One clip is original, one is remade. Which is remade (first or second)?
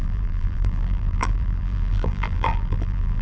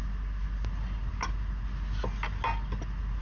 first